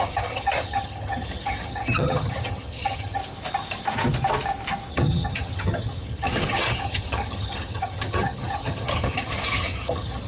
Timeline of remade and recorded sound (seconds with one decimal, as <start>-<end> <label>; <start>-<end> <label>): 0.0-3.2 remade; 3.2-4.9 recorded; 4.9-10.3 remade